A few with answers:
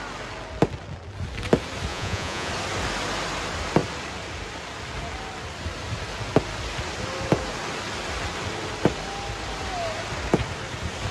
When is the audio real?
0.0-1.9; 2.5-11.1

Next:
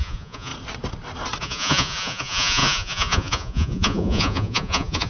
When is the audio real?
0.5-1.4

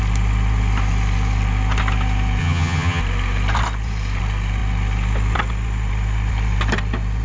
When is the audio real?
0.0-2.4; 3.0-7.2